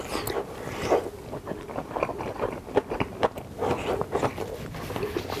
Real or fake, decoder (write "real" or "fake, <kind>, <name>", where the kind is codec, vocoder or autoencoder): real